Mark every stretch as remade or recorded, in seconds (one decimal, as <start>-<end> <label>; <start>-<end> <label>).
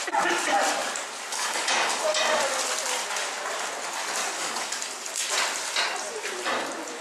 0.0-1.3 recorded; 1.3-1.9 remade; 1.9-4.2 recorded; 4.2-4.8 remade; 4.8-7.0 recorded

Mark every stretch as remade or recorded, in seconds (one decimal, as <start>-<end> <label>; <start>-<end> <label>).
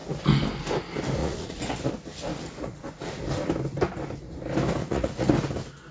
0.0-1.2 recorded; 1.2-1.8 remade; 1.8-2.3 recorded; 2.3-3.2 remade; 3.2-4.8 recorded; 4.8-5.3 remade; 5.3-5.9 recorded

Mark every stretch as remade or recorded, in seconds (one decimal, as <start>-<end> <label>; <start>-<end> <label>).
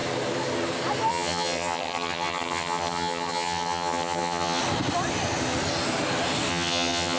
0.0-1.1 recorded; 1.1-4.6 remade; 4.6-6.5 recorded; 6.5-7.2 remade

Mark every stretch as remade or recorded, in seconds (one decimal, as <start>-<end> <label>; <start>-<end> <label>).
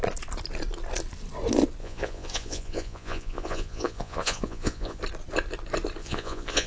0.0-1.8 recorded; 1.8-5.0 remade; 5.0-6.0 recorded; 6.0-6.7 remade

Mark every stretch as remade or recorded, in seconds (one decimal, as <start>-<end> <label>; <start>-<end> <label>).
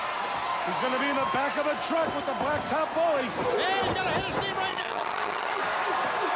0.0-4.7 recorded; 4.7-5.6 remade; 5.6-6.4 recorded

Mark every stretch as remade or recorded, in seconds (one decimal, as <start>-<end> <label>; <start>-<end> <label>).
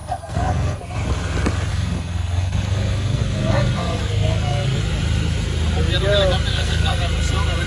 0.0-0.8 remade; 0.8-1.7 recorded; 1.7-4.8 remade; 4.8-6.5 recorded; 6.5-7.0 remade; 7.0-7.7 recorded